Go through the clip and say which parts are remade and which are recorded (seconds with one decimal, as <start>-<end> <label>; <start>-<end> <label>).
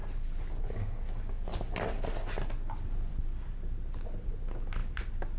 0.0-5.4 recorded